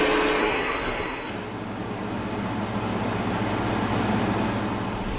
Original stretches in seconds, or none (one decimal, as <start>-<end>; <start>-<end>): 0.0-0.4; 1.3-5.2

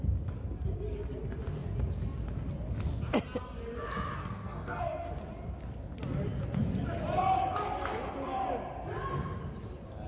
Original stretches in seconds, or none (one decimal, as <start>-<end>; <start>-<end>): 0.0-4.2; 5.2-10.1

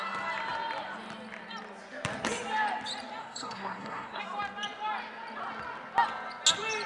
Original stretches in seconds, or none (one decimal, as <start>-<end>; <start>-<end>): 0.0-3.2; 4.2-6.9